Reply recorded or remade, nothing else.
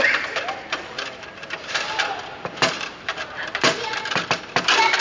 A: recorded